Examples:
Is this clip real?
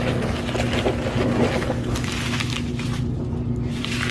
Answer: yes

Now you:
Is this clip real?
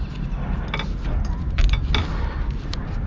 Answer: yes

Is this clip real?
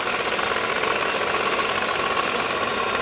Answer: yes